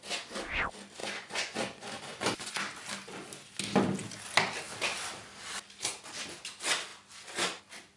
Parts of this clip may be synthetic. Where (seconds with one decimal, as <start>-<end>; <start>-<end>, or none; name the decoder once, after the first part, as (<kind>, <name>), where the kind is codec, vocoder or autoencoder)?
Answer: 1.0-2.6 (vocoder, Vocos)